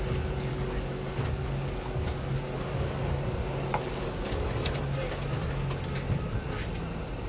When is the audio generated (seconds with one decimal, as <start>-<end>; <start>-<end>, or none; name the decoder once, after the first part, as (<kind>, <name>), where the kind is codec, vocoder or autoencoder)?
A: 0.5-4.5 (codec, DAC)